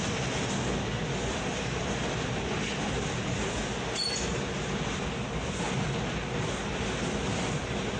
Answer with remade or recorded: recorded